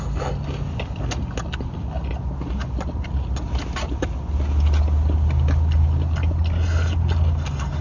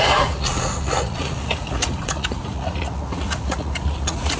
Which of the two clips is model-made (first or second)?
second